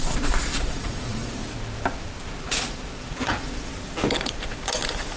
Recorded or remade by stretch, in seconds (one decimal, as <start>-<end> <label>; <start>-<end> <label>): 0.0-1.4 remade; 1.4-2.3 recorded; 2.3-3.7 remade; 3.7-5.2 recorded